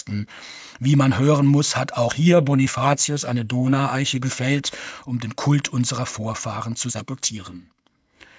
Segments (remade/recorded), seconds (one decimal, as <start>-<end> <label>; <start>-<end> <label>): 0.0-0.6 remade; 0.6-2.1 recorded; 2.1-4.8 remade; 4.8-6.9 recorded; 6.9-8.4 remade